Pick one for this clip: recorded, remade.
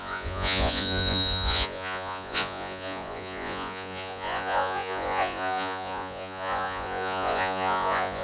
remade